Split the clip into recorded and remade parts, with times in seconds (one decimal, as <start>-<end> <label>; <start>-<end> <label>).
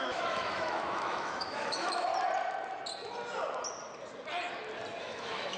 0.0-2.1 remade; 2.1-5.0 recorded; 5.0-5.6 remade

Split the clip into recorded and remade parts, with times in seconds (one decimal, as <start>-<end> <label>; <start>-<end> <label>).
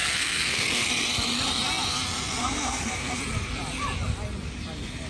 0.0-0.9 remade; 0.9-2.4 recorded; 2.4-3.2 remade; 3.2-5.1 recorded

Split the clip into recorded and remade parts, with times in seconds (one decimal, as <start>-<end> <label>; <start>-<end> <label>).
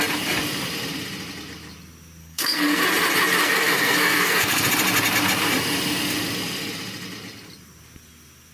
0.0-2.2 recorded; 2.2-2.8 remade; 2.8-3.4 recorded; 3.4-4.6 remade; 4.6-8.5 recorded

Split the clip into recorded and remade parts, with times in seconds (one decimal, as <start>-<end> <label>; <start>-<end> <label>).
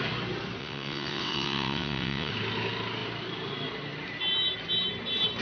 0.0-0.6 recorded; 0.6-2.3 remade; 2.3-5.4 recorded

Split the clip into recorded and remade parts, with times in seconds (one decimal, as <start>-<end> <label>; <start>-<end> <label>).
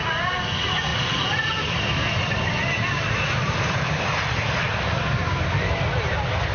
0.0-0.9 recorded; 0.9-4.8 remade; 4.8-6.5 recorded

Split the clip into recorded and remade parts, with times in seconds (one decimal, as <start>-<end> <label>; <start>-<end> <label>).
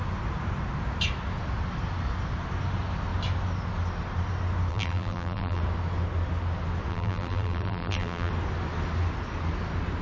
0.0-4.7 recorded; 4.7-5.6 remade; 5.6-6.9 recorded; 6.9-8.3 remade; 8.3-10.0 recorded